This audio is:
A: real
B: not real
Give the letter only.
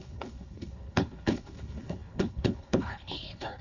B